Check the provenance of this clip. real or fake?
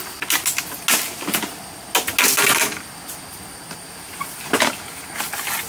real